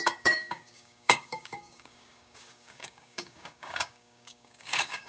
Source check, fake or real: fake